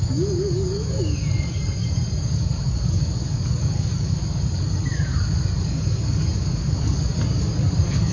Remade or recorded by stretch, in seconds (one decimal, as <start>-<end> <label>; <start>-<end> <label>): 0.0-8.1 remade